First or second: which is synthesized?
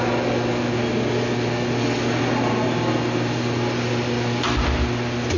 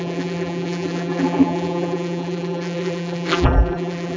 second